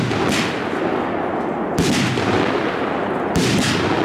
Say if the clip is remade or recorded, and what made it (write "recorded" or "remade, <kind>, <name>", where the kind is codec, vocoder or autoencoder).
recorded